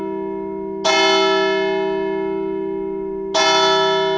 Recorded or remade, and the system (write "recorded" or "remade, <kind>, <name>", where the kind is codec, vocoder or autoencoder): recorded